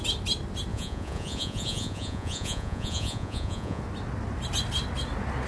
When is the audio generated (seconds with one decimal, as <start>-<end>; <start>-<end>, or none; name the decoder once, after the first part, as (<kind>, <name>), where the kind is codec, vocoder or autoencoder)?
0.7-3.8 (vocoder, Vocos)